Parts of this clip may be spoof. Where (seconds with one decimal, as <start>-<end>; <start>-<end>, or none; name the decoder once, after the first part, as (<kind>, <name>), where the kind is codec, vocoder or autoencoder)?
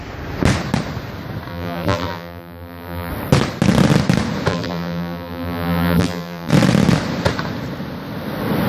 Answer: 1.5-3.1 (vocoder, BigVGAN v2); 4.5-6.5